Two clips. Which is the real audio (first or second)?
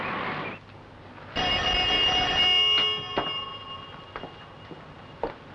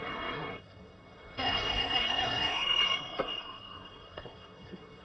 first